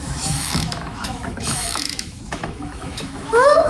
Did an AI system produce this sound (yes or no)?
yes